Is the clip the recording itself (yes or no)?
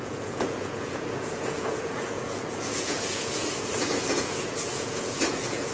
no